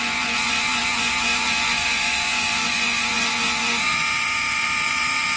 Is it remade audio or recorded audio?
remade